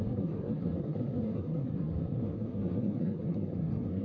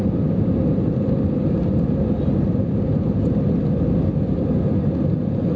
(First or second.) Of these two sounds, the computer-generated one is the first